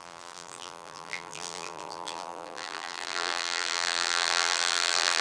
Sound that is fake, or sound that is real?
fake